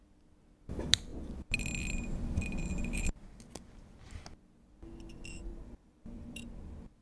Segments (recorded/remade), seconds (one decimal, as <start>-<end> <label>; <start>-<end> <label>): 0.0-5.5 recorded; 5.5-6.4 remade; 6.4-7.0 recorded